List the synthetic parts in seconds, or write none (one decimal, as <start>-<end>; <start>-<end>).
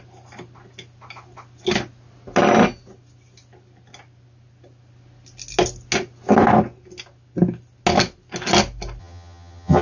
9.0-9.8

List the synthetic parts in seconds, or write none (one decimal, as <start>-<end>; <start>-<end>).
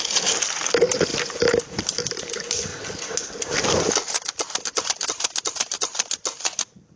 1.1-2.3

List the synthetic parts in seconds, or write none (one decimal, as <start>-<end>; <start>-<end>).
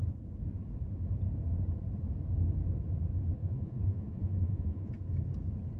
3.4-4.9